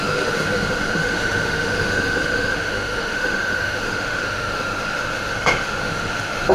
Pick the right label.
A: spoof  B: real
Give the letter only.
A